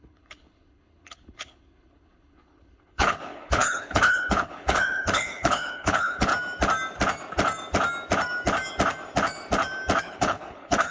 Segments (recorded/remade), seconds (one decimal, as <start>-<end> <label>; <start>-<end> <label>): 0.0-6.3 remade; 6.3-10.0 recorded; 10.0-10.9 remade